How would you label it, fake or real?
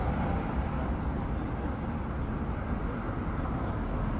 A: real